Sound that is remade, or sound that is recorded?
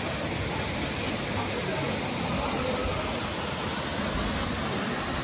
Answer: recorded